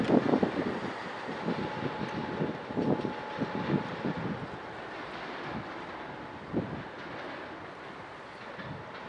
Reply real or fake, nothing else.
real